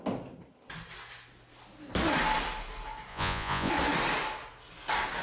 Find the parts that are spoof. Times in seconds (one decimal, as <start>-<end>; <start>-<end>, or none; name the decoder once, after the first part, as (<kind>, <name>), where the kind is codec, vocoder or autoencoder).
3.1-3.7 (vocoder, Vocos)